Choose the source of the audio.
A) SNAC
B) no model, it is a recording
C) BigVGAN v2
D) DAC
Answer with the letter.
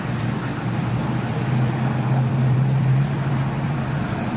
C